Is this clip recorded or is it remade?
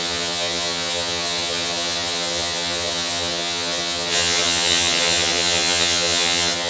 remade